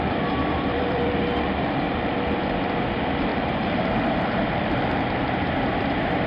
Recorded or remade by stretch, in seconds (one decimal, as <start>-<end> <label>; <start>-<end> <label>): 0.0-0.7 recorded; 0.7-2.5 remade; 2.5-3.3 recorded; 3.3-5.2 remade; 5.2-6.3 recorded